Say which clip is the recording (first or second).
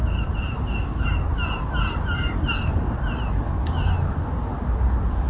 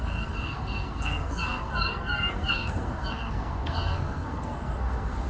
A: first